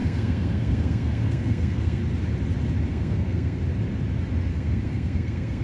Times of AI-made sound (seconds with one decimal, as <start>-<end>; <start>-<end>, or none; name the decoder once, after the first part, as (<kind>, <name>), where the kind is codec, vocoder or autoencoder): 0.0-2.0 (codec, SNAC); 2.9-3.6; 4.5-5.6